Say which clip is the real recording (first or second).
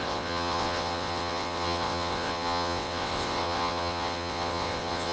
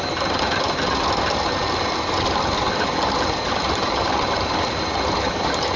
second